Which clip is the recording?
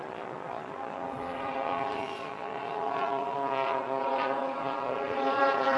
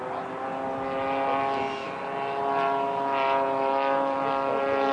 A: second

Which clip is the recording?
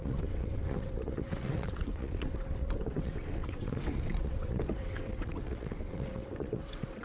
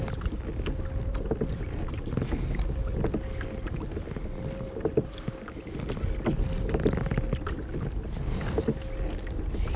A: second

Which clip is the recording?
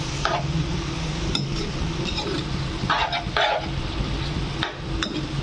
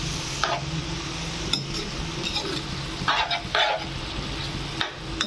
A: second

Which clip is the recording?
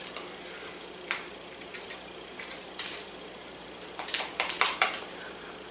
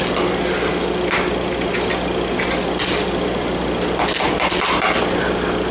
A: second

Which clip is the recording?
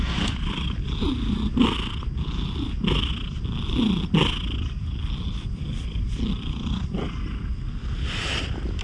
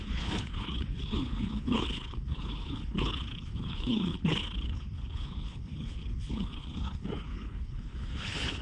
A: first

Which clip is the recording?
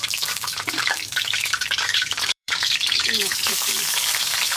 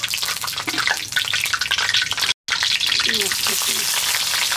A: second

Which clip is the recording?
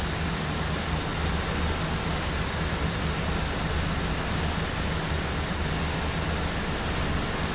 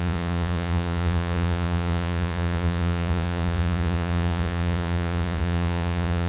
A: first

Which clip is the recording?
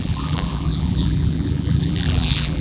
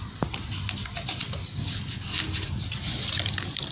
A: second